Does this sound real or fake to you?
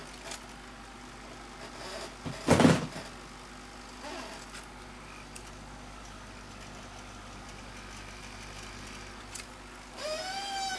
real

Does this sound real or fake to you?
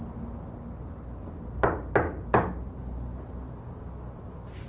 real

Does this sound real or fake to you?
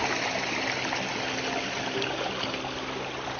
real